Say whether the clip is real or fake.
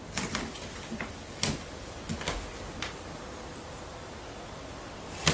real